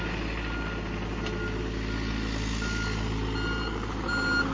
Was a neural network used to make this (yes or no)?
no